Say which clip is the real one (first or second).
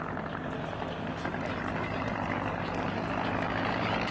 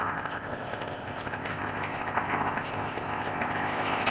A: first